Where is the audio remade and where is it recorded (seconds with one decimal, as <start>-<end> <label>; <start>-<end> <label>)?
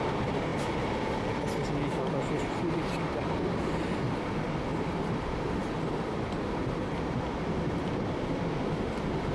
0.0-4.7 recorded; 4.7-6.6 remade; 6.6-9.3 recorded